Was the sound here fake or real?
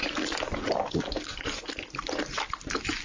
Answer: real